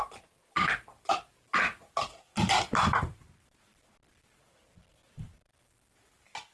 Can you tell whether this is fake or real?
real